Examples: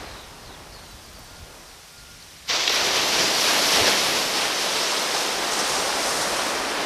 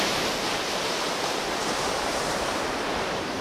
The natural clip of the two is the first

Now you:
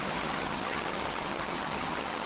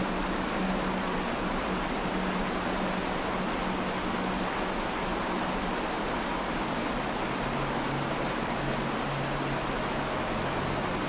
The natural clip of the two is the second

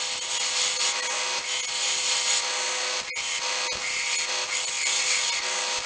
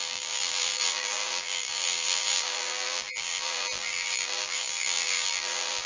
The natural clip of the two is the first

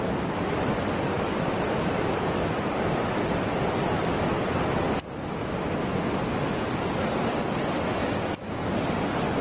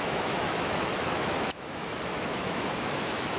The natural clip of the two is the first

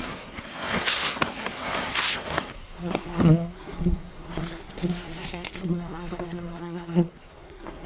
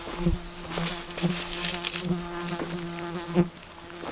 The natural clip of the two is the second